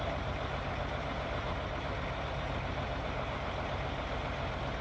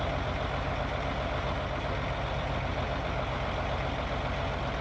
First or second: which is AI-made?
first